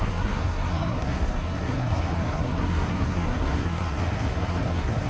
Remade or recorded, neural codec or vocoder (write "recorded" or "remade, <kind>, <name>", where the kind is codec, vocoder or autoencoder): remade, codec, SNAC